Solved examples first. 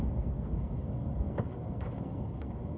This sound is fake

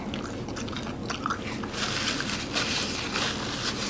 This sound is real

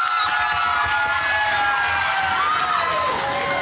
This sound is real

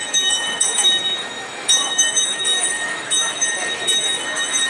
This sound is fake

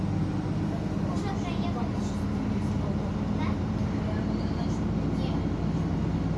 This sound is real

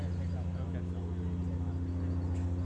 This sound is real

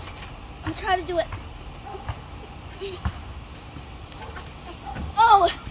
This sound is real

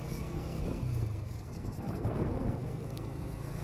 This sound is fake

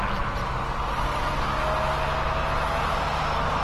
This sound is real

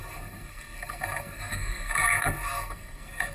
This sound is fake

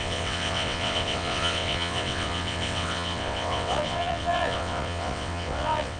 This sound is fake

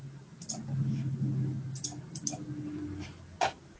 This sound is real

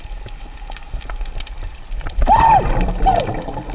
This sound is fake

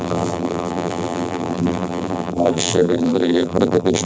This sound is fake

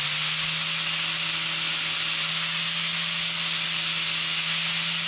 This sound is real